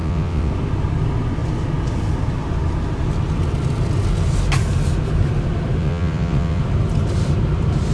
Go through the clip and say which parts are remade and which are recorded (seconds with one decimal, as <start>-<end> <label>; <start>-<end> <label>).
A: 0.0-0.5 remade; 0.5-5.8 recorded; 5.8-6.6 remade; 6.6-7.9 recorded